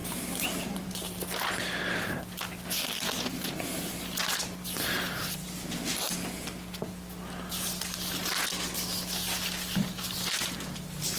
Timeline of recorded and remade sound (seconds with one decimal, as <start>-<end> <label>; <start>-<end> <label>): 0.0-11.2 recorded